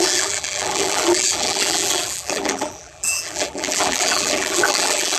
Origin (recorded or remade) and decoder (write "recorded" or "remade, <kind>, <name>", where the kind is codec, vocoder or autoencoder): remade, vocoder, BigVGAN v2